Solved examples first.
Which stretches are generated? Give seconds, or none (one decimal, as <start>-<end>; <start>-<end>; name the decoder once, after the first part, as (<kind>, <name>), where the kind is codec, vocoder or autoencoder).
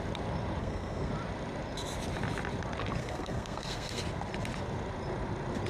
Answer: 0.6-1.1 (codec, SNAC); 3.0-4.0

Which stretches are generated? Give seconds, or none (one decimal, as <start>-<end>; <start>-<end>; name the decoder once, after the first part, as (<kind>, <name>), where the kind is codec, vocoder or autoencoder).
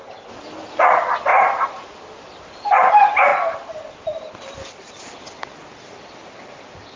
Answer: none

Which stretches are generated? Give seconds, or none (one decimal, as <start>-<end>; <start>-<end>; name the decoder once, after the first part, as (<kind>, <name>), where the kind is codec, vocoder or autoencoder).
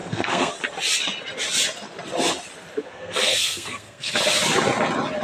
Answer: 0.0-0.5 (codec, SNAC); 2.9-4.1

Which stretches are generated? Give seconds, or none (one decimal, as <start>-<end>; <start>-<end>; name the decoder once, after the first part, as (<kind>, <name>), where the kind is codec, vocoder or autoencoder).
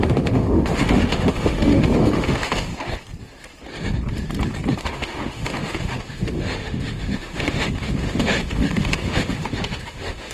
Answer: 0.0-2.7 (autoencoder, DAC-VAE); 4.8-10.3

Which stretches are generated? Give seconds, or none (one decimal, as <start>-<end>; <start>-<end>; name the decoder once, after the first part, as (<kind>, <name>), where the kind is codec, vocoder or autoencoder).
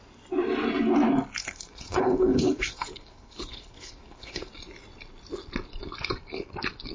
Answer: 1.4-4.5 (codec, HILCodec)